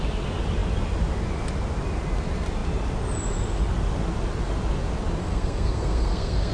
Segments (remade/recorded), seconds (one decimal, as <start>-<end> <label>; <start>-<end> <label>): 0.0-5.2 recorded; 5.2-6.5 remade